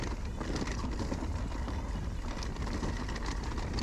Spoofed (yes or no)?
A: no